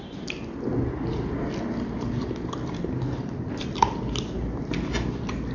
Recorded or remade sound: recorded